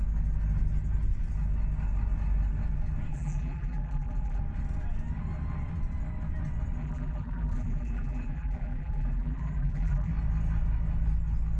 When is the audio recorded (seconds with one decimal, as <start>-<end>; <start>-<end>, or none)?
0.0-3.1; 4.4-6.8; 10.1-11.6

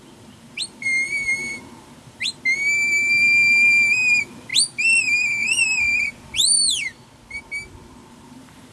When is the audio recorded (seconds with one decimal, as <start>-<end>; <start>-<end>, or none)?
2.3-3.9; 4.5-8.1

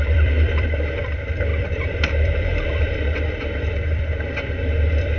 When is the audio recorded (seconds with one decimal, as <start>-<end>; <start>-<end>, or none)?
none

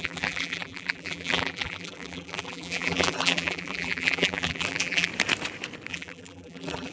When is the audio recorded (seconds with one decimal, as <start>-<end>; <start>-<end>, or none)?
5.1-5.9

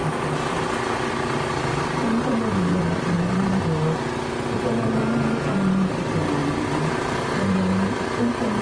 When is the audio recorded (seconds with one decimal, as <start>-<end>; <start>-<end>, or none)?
3.6-6.4; 8.0-8.6

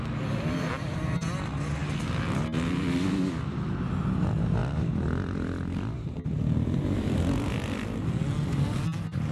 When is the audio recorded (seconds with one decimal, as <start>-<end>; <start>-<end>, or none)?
0.0-4.6; 8.1-9.3

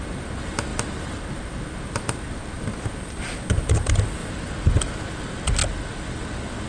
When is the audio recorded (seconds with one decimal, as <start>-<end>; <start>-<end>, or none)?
0.0-6.7

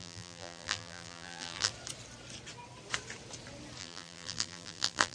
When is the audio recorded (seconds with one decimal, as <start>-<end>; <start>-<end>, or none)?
1.7-3.8